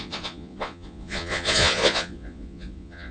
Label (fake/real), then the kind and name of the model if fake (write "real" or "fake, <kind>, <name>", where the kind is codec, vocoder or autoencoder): fake, vocoder, Vocos